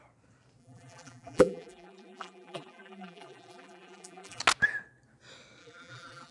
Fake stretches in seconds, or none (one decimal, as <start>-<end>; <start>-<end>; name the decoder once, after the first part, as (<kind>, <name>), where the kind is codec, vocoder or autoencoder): 0.6-4.4 (vocoder, BigVGAN v2); 5.6-6.3